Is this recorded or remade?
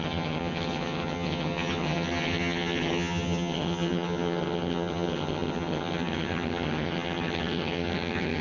remade